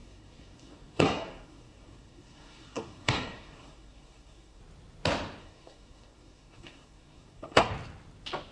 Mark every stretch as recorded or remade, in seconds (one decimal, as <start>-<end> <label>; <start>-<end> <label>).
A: 0.0-4.6 remade; 4.6-5.4 recorded; 5.4-7.7 remade; 7.7-8.5 recorded